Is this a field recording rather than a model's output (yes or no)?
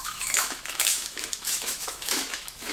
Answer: no